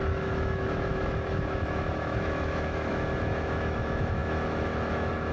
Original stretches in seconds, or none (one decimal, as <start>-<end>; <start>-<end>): none